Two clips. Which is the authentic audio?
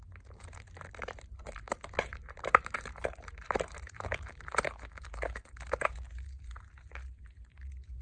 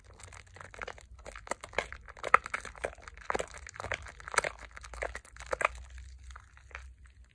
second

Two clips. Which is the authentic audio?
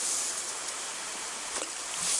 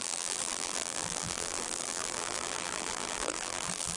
first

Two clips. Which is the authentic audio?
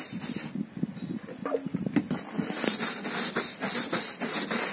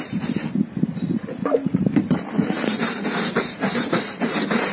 first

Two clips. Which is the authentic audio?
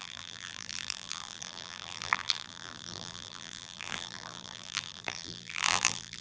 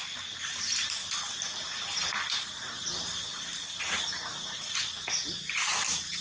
second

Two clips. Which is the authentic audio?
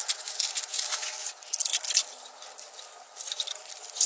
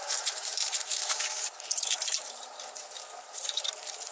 first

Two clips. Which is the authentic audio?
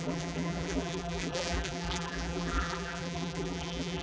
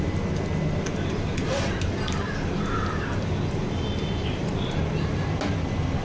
second